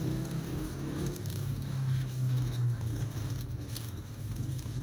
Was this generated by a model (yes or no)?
yes